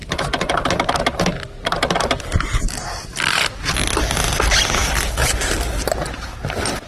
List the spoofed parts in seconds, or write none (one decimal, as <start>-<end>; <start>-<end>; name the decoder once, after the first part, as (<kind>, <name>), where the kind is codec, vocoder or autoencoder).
4.1-6.9 (vocoder, BigVGAN v2)